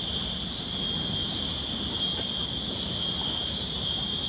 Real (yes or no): yes